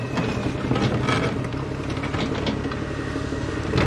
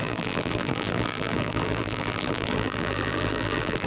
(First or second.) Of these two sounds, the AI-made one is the second